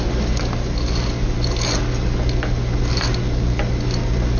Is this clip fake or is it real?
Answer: real